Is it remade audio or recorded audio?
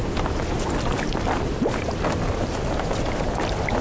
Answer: recorded